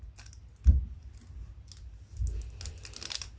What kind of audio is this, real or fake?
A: real